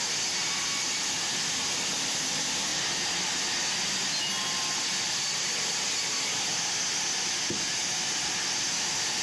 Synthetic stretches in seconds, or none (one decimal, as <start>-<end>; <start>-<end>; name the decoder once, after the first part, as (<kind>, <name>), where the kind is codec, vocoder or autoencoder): none